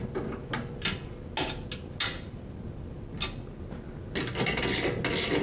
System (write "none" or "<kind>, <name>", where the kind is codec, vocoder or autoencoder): none